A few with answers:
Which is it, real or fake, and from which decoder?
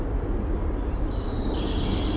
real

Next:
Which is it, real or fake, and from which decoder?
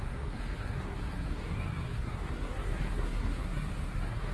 fake, codec, SNAC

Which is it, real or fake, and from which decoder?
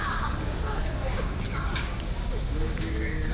fake, codec, DAC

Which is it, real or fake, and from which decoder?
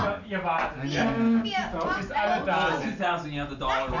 real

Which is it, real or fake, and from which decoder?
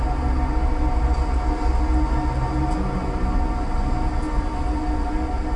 real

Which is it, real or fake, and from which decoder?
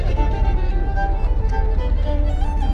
fake, vocoder, BigVGAN v2